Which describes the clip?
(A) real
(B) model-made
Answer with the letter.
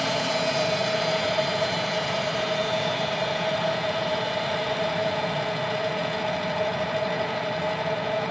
B